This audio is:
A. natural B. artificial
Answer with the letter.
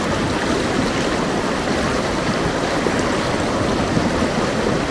A